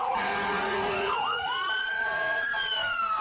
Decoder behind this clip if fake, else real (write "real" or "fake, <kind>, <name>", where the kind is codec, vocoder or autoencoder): fake, vocoder, Vocos